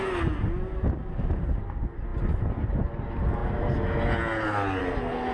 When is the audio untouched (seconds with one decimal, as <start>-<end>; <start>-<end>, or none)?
0.0-5.3